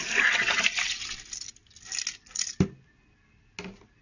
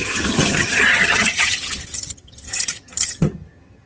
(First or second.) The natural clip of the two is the first